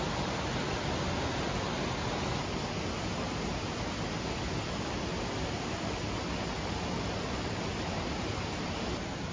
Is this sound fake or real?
real